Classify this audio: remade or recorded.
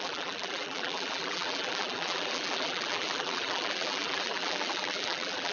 remade